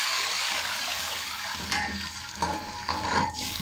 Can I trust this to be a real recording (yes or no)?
no